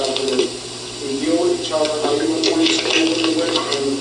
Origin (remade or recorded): recorded